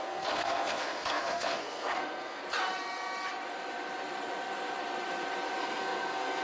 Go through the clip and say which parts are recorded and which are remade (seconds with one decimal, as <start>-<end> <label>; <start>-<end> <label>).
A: 0.0-2.4 remade; 2.4-5.6 recorded; 5.6-6.4 remade